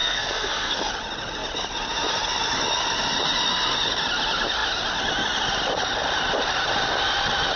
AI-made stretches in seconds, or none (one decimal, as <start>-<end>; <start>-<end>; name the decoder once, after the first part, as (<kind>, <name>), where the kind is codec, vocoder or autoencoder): 0.0-0.8 (codec, SNAC)